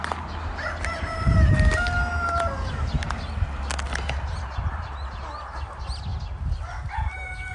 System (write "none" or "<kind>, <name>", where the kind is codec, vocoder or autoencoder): none